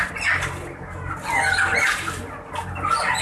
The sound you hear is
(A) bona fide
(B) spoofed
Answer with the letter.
A